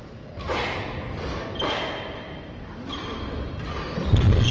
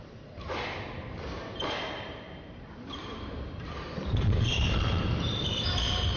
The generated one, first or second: second